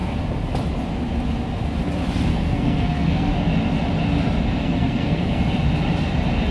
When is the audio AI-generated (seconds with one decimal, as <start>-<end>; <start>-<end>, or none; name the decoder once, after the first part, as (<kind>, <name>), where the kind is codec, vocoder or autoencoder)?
2.3-3.3 (codec, SNAC); 4.6-5.4